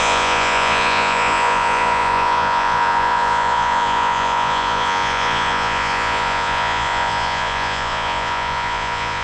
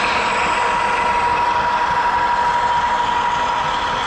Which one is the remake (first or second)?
first